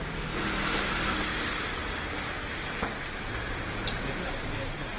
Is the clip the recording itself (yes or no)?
yes